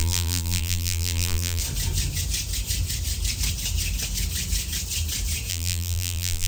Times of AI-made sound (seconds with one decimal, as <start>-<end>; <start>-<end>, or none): 0.0-1.6; 5.5-6.5